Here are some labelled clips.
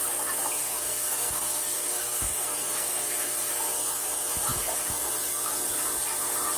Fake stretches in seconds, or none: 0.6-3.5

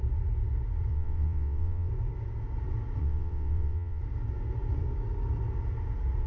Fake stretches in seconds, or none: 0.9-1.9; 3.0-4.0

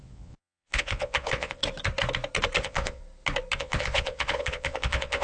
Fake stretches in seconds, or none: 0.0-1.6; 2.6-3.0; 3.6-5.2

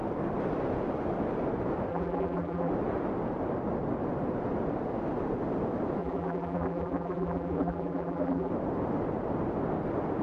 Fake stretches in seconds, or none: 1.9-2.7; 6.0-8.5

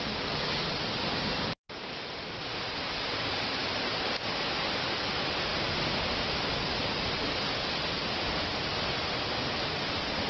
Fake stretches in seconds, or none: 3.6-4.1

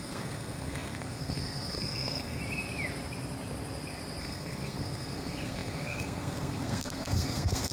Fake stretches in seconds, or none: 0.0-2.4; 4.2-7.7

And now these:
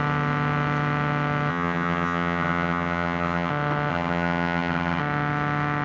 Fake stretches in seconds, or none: 1.5-3.5; 3.9-5.0

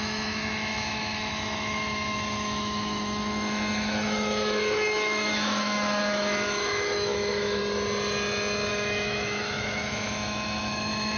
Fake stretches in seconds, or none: 0.0-7.6; 8.7-11.2